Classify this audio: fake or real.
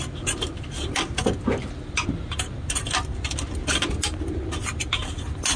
real